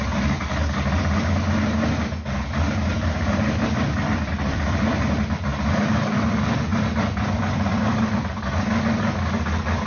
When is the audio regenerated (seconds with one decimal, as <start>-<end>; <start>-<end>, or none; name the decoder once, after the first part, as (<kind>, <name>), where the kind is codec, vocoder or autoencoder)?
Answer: 2.9-4.9 (vocoder, BigVGAN v2); 6.7-7.9